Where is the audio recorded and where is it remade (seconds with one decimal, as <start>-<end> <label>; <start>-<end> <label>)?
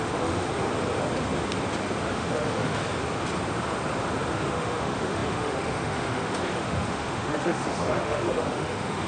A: 0.0-0.5 remade; 0.5-2.1 recorded; 2.1-2.8 remade; 2.8-4.3 recorded; 4.3-9.1 remade